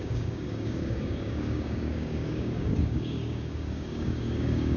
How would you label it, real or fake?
fake